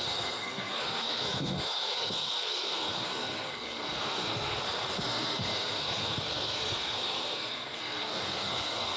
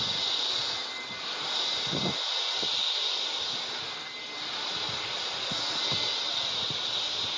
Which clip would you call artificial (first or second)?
first